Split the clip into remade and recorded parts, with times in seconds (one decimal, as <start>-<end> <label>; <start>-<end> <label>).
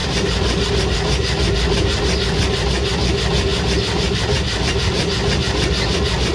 0.0-6.3 recorded